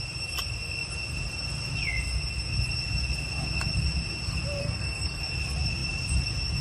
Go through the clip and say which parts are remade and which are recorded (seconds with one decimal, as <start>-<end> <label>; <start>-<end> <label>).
0.0-4.6 recorded; 4.6-5.2 remade; 5.2-6.6 recorded